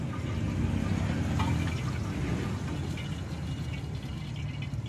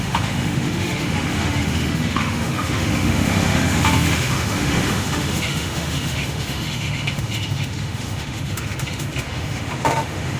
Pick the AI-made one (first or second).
second